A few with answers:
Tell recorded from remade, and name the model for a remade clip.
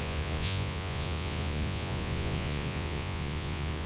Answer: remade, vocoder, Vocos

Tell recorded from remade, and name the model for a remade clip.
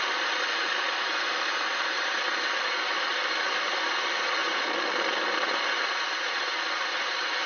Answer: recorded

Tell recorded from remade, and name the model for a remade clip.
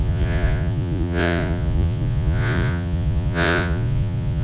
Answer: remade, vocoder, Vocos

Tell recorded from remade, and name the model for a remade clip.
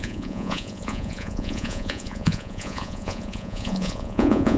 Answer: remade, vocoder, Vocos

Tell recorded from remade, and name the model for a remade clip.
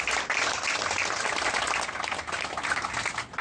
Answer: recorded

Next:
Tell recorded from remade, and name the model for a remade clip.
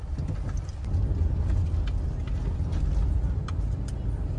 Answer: recorded